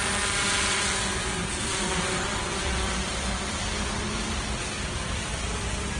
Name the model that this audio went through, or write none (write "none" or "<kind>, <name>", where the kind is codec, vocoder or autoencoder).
none